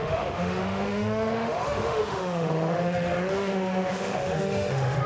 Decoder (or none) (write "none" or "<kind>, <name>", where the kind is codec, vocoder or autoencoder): autoencoder, DAC-VAE